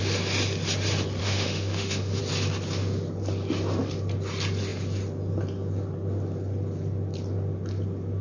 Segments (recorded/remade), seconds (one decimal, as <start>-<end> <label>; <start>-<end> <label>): 0.0-1.2 recorded; 1.2-2.2 remade; 2.2-8.2 recorded